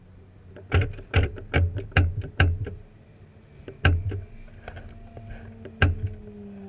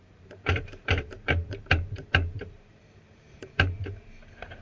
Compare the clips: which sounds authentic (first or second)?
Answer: first